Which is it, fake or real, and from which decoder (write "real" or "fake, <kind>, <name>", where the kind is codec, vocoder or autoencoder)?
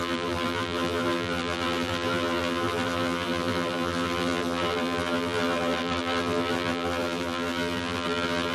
fake, vocoder, BigVGAN v2